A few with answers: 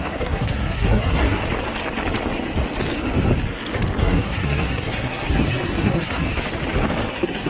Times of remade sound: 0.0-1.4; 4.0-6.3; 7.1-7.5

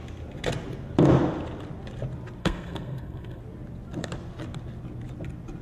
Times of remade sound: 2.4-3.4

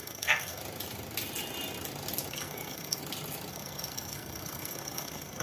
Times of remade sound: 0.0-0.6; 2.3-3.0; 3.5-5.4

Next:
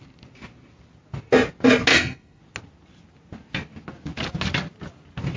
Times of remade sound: 1.9-2.4